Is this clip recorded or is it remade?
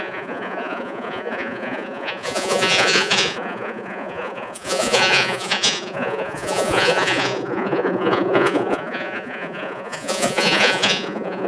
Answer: remade